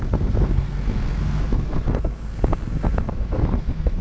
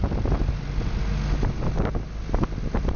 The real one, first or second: second